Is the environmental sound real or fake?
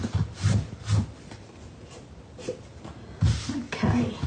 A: real